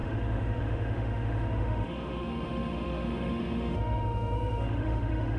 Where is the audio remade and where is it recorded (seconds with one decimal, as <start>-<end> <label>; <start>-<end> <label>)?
0.0-5.4 remade